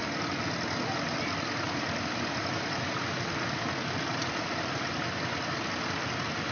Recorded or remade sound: recorded